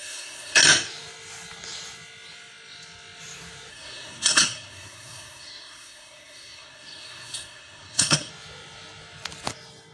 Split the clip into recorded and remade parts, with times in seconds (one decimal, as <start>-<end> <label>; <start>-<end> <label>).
0.0-0.6 remade; 0.6-3.7 recorded; 3.7-8.3 remade; 8.3-9.9 recorded